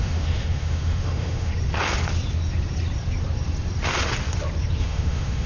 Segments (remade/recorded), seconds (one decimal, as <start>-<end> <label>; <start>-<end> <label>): 0.0-1.5 remade; 1.5-4.8 recorded; 4.8-5.5 remade